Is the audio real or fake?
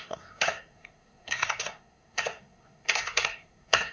fake